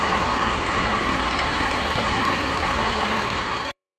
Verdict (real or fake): fake